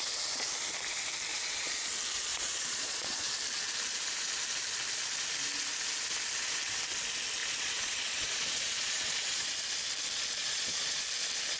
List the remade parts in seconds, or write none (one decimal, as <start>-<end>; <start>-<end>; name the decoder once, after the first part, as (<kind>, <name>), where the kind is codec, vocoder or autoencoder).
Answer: 1.3-1.9 (vocoder, Vocos); 2.3-3.3; 7.4-9.5; 10.4-11.0